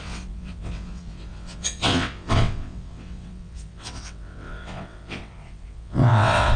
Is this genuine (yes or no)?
no